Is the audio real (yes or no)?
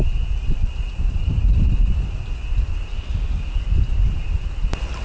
yes